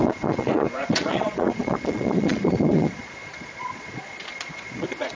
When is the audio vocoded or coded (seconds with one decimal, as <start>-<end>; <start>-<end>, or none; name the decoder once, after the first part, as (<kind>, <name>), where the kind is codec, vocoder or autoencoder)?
0.0-5.1 (vocoder, Vocos)